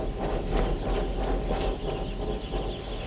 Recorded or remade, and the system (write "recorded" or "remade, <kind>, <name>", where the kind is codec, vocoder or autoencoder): recorded